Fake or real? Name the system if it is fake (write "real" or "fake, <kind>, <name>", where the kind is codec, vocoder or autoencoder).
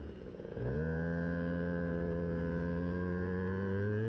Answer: fake, vocoder, Vocos